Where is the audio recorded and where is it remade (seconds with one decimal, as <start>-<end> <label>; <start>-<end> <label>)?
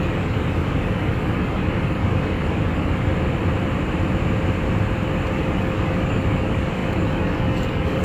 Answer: 0.0-3.1 remade; 3.1-5.3 recorded; 5.3-8.0 remade